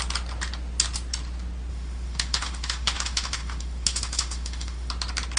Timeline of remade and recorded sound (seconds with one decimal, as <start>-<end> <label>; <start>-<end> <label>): 0.0-1.7 recorded; 1.7-4.9 remade; 4.9-5.4 recorded